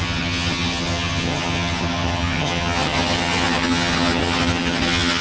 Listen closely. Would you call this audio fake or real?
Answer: fake